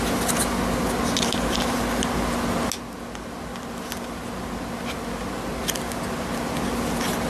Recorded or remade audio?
recorded